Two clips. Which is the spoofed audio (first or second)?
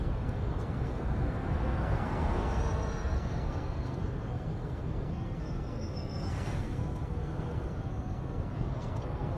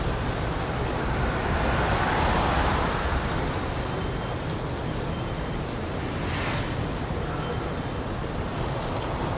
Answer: first